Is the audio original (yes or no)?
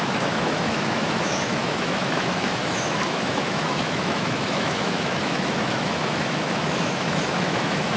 no